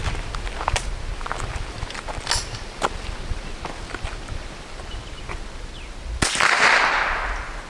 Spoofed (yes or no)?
no